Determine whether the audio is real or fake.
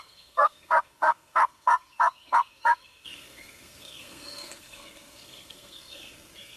fake